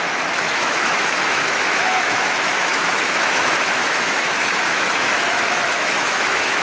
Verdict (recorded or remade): remade